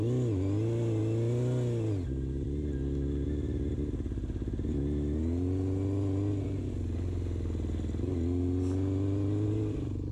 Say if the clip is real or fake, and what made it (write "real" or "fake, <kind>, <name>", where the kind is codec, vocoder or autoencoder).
real